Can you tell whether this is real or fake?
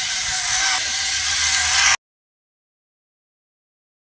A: real